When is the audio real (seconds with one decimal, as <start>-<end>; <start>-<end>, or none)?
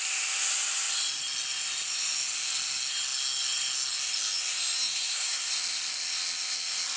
0.0-4.9; 5.5-7.0